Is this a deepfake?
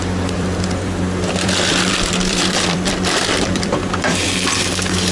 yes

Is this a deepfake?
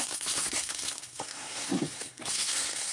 yes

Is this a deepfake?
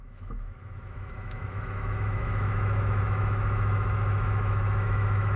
yes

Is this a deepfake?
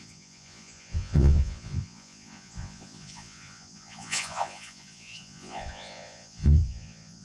yes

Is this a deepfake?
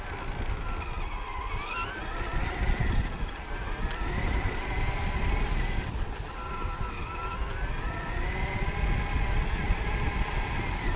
no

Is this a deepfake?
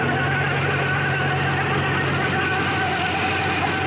no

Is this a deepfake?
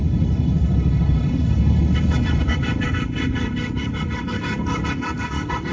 yes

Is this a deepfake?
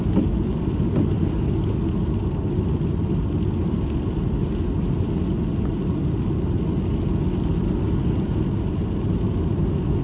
no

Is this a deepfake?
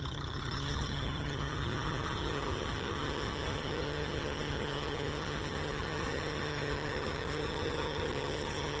yes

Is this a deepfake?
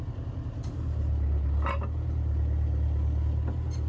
no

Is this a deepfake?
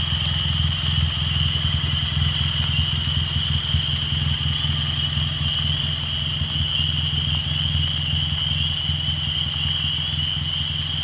no